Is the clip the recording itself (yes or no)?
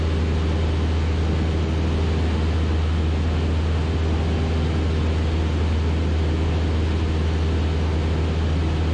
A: yes